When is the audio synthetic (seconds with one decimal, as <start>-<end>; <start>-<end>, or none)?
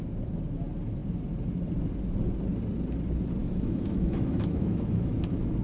3.4-5.1